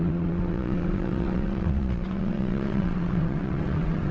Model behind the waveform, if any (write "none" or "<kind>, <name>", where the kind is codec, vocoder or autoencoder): vocoder, WaveNeXt